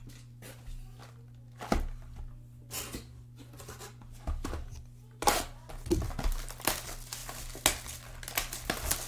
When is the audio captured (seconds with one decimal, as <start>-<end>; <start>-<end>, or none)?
0.0-9.1